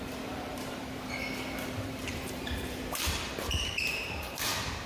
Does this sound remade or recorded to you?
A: remade